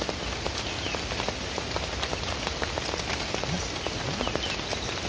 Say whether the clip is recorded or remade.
recorded